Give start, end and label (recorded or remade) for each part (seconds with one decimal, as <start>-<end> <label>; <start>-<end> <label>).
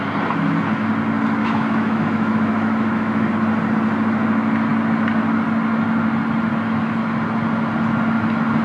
0.0-1.4 recorded; 1.4-3.3 remade; 3.3-8.6 recorded